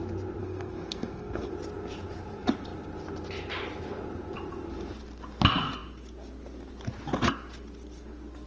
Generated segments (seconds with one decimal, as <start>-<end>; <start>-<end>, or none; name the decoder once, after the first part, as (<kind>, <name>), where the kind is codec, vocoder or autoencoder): 0.4-1.5 (codec, SNAC)